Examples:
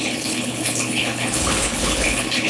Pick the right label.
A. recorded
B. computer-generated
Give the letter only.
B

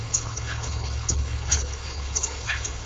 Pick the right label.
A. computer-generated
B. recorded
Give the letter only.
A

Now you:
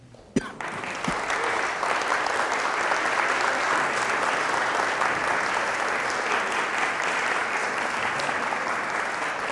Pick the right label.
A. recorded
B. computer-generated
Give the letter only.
A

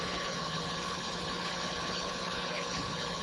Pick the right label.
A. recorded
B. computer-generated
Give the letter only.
B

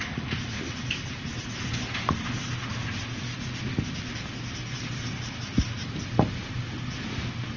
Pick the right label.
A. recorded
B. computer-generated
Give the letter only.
A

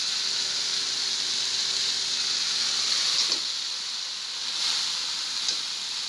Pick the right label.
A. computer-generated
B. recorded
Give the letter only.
B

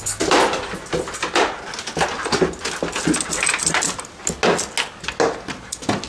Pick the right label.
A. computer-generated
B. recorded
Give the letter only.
B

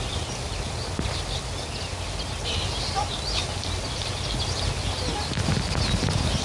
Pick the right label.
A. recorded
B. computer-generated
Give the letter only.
A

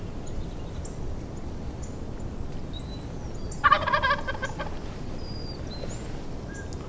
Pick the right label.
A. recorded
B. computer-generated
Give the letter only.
A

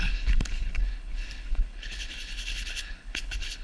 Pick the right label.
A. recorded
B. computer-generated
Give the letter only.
B